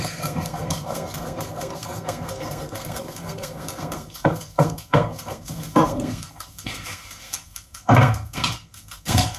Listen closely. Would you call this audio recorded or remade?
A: remade